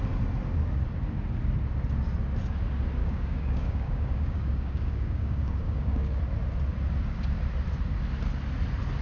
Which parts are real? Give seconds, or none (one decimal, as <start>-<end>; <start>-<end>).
0.0-3.0; 6.2-9.0